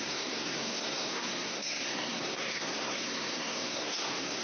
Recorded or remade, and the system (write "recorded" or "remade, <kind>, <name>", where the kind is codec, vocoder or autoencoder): remade, codec, SNAC